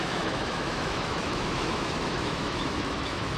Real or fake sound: fake